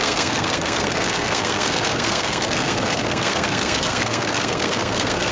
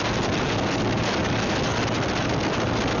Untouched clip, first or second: second